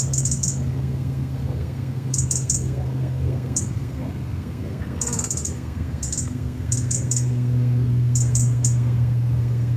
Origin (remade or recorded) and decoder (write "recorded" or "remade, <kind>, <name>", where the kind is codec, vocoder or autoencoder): remade, codec, SNAC